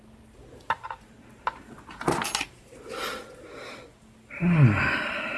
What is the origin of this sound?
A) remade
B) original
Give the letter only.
B